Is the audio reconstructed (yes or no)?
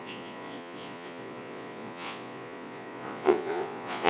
yes